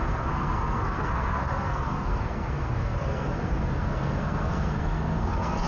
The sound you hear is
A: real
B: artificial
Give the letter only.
B